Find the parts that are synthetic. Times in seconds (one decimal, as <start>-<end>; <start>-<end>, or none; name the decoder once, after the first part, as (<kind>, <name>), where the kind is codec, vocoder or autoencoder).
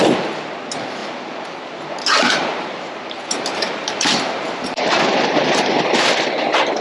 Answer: 1.0-5.0 (vocoder, BigVGAN v2)